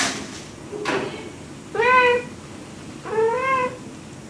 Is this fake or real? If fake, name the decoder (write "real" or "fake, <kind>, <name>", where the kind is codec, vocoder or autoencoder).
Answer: real